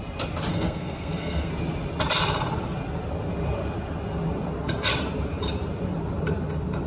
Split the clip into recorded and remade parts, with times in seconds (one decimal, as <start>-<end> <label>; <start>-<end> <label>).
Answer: 0.0-0.5 recorded; 0.5-1.5 remade; 1.5-6.9 recorded

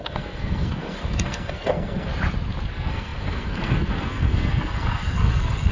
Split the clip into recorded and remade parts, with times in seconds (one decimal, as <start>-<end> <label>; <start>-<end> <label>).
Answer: 0.0-2.1 remade; 2.1-2.7 recorded; 2.7-5.7 remade